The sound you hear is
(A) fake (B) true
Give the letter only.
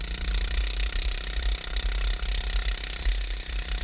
B